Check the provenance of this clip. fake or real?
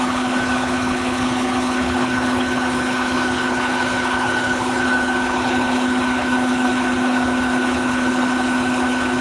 fake